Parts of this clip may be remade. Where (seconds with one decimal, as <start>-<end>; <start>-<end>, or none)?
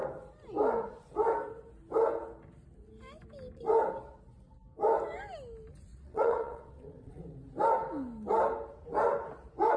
5.9-7.2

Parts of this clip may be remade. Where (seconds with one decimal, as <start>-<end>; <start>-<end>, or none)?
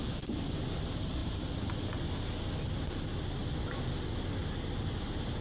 1.2-1.7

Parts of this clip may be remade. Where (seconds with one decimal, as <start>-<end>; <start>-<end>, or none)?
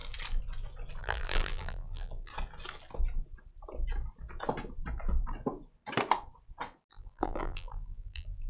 1.0-2.3; 6.9-8.5